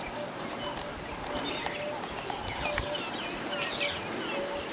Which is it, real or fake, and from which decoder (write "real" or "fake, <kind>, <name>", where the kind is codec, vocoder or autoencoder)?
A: real